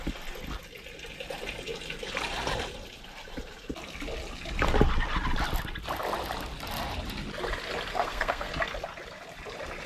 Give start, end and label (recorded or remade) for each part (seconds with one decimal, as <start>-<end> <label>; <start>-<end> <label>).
0.0-7.9 recorded; 7.9-8.5 remade; 8.5-9.9 recorded